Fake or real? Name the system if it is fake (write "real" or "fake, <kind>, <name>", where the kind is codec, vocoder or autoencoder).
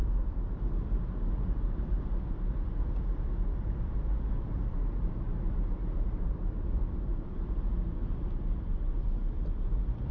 fake, vocoder, BigVGAN v2